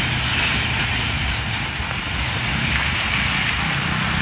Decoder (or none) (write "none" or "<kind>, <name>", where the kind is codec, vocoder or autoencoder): none